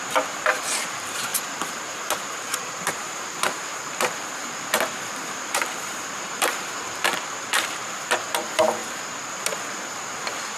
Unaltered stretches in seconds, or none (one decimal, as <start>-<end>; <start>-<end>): 8.8-9.7